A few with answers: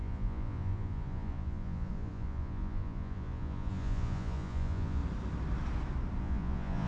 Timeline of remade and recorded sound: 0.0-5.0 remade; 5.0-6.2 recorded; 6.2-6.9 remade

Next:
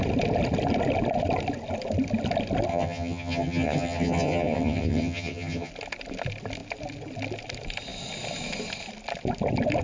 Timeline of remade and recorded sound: 0.0-2.7 recorded; 2.7-5.7 remade; 5.7-9.8 recorded

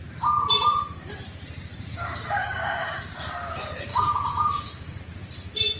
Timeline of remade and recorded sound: 0.0-2.4 recorded; 2.4-3.1 remade; 3.1-3.9 recorded; 3.9-5.0 remade; 5.0-5.8 recorded

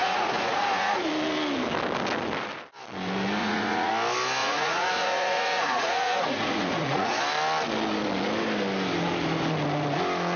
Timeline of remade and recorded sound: 0.0-1.1 remade; 1.1-3.4 recorded; 3.4-3.9 remade; 3.9-4.4 recorded; 4.4-7.2 remade; 7.2-10.4 recorded

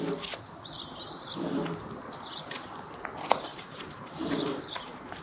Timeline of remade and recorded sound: 0.0-3.5 recorded; 3.5-5.2 remade

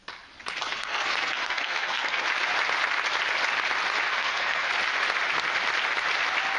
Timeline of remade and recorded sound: 0.0-0.7 recorded; 0.7-2.2 remade; 2.2-4.1 recorded; 4.1-4.7 remade; 4.7-6.6 recorded